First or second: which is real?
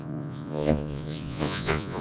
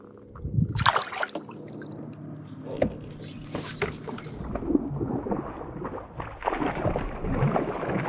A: second